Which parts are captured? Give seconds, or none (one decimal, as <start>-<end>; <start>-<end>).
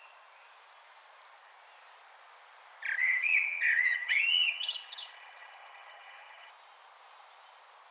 0.0-3.0; 6.5-7.9